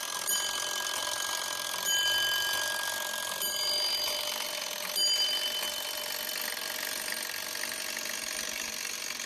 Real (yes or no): yes